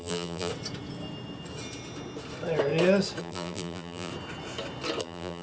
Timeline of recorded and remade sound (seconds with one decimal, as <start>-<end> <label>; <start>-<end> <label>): 0.0-0.5 remade; 0.5-3.2 recorded; 3.2-4.1 remade; 4.1-5.0 recorded; 5.0-5.4 remade